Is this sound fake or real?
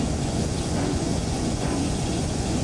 fake